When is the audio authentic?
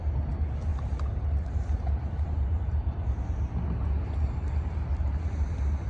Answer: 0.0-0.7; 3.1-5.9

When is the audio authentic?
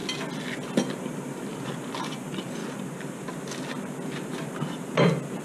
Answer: 0.0-1.0; 1.5-2.0; 2.6-5.4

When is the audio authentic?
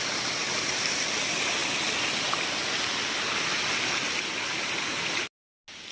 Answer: 0.0-0.4; 1.1-5.9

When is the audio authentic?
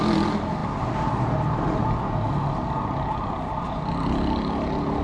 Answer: 0.0-5.0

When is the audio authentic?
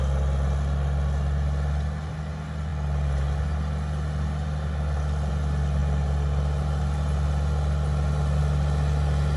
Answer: 0.0-9.4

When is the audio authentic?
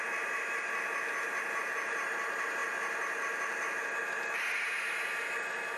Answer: 0.0-5.8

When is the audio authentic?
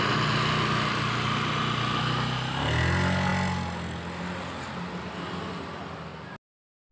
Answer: 0.0-6.9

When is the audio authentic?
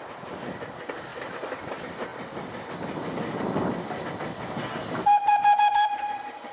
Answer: 2.1-5.7